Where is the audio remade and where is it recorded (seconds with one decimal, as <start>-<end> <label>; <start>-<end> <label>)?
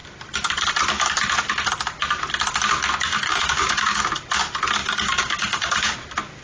0.0-3.1 recorded; 3.1-4.0 remade; 4.0-4.8 recorded; 4.8-5.9 remade; 5.9-6.4 recorded